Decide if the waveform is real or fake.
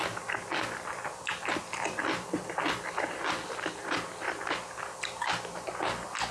real